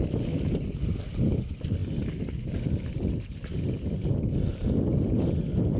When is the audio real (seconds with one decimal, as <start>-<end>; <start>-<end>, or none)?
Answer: 3.5-4.5